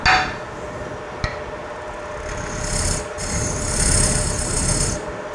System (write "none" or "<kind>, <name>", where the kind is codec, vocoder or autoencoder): none